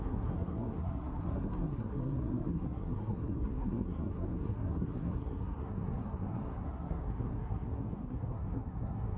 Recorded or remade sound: remade